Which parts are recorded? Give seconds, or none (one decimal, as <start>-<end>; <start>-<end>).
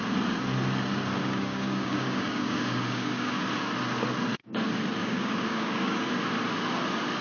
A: 0.0-1.2; 3.4-5.0; 6.2-7.2